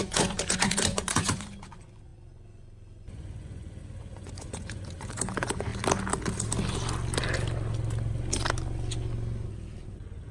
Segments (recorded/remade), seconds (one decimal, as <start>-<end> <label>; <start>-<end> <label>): 0.0-5.7 remade; 5.7-9.9 recorded; 9.9-10.3 remade